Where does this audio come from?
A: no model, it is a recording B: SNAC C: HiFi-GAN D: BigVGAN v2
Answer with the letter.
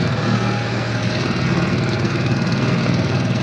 B